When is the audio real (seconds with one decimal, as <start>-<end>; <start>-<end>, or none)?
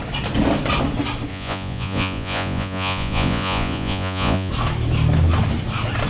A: 0.0-1.3; 4.5-6.1